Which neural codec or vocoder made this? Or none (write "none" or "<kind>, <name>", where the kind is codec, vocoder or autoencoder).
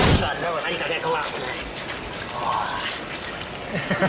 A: none